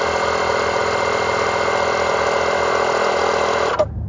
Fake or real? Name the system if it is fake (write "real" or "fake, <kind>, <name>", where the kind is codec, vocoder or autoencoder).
real